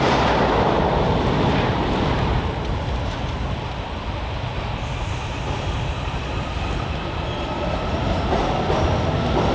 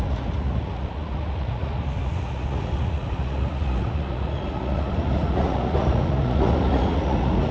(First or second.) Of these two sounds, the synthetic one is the second